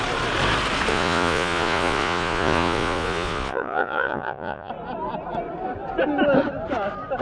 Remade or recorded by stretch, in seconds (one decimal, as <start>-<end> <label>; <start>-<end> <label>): 0.0-0.9 recorded; 0.9-4.7 remade; 4.7-7.2 recorded